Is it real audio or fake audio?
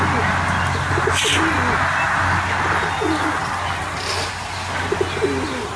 real